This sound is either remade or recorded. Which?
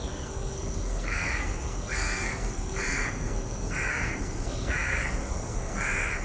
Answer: remade